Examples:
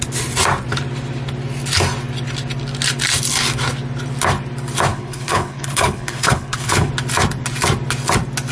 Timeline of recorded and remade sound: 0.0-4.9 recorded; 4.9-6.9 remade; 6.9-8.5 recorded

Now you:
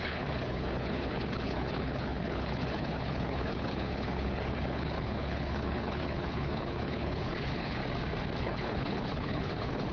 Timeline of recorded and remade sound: 0.0-7.8 remade; 7.8-8.4 recorded; 8.4-9.9 remade

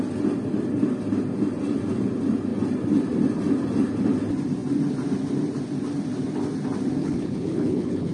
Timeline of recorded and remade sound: 0.0-7.0 recorded; 7.0-8.1 remade

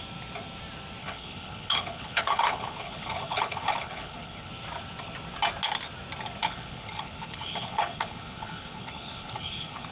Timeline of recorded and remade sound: 0.0-1.0 recorded; 1.0-4.5 remade; 4.5-6.4 recorded; 6.4-9.9 remade